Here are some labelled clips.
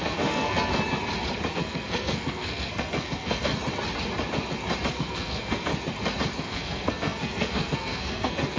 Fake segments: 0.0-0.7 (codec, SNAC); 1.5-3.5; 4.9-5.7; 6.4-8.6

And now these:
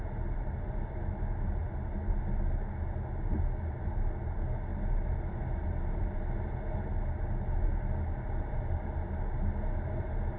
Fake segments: none